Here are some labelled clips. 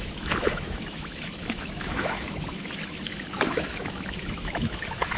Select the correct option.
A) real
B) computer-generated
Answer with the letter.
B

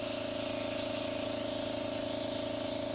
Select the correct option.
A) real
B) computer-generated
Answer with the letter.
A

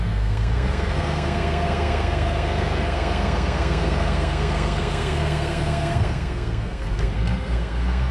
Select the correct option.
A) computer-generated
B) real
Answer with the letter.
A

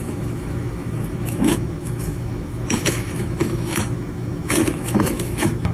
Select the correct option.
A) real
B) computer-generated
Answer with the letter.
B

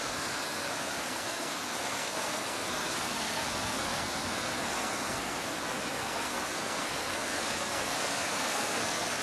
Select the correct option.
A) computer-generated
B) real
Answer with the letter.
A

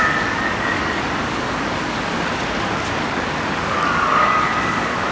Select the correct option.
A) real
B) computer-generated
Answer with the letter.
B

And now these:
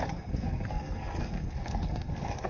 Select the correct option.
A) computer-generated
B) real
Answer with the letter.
A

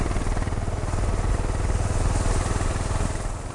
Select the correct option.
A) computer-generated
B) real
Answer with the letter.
B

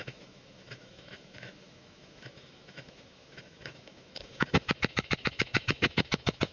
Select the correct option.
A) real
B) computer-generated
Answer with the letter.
B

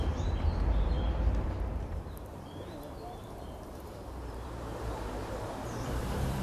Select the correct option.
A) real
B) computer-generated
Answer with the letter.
B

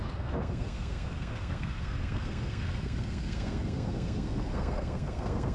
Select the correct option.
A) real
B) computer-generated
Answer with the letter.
B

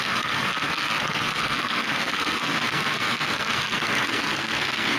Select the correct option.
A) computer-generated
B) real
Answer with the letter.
A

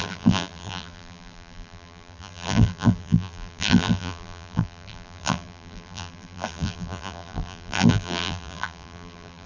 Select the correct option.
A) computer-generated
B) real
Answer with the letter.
A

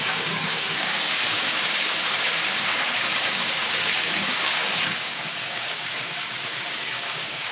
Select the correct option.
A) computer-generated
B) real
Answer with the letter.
A